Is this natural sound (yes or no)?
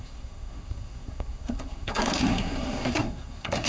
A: no